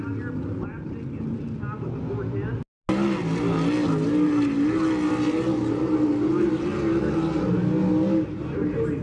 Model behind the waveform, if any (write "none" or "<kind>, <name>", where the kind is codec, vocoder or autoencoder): none